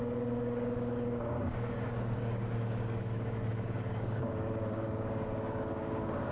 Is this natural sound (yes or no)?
no